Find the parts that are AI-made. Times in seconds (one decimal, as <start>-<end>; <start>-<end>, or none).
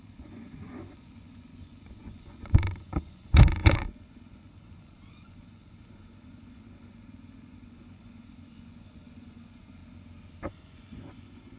0.0-9.8; 10.5-11.6